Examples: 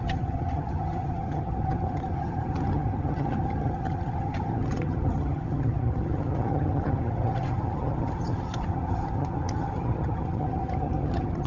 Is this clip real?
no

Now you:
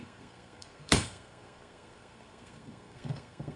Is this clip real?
no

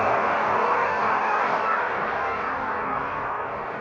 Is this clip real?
no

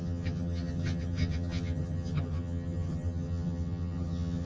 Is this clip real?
no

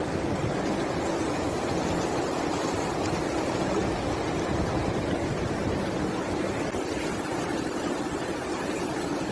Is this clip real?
yes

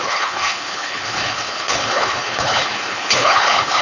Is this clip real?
no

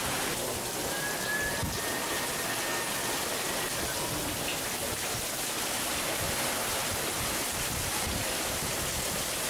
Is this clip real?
yes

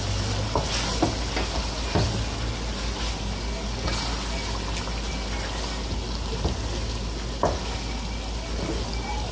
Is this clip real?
yes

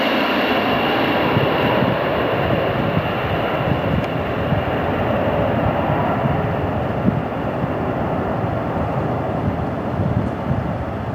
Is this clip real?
yes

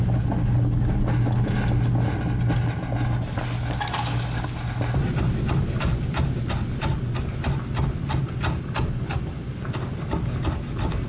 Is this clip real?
yes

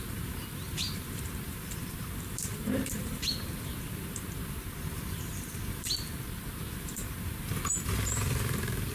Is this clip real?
no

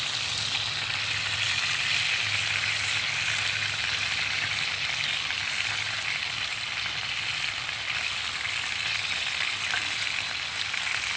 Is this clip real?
yes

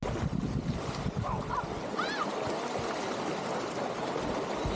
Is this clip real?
yes